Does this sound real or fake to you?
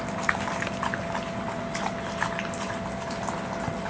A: real